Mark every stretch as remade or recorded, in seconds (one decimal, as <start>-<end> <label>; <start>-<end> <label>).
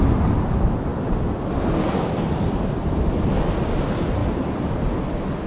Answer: 0.0-4.2 recorded; 4.2-4.8 remade; 4.8-5.5 recorded